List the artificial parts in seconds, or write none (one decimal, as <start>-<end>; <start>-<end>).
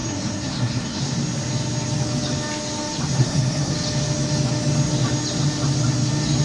0.0-1.0; 3.2-3.7